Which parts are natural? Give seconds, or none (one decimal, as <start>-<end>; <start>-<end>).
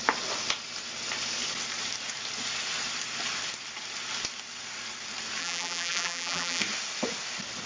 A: 0.0-5.4; 6.6-7.7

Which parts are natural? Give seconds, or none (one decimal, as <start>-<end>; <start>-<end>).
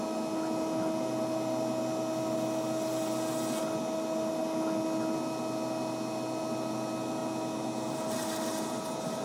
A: 0.0-9.2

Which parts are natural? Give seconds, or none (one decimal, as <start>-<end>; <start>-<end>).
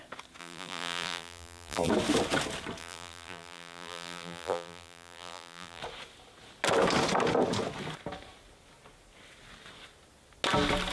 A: 0.0-0.4; 1.9-2.8; 5.8-10.9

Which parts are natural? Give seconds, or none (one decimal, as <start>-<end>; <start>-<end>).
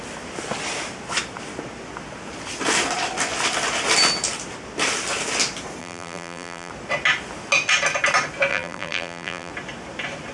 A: 0.0-5.8; 6.7-8.5; 9.5-10.3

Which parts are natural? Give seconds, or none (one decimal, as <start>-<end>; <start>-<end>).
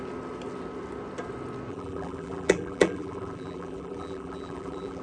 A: 0.0-1.7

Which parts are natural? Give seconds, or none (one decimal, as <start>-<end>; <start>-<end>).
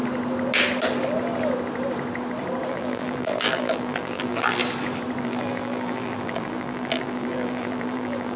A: 0.0-2.7; 4.6-5.2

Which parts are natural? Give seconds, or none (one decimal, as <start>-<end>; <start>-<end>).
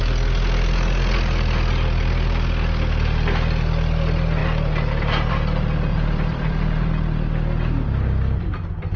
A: 0.0-5.9; 6.9-9.0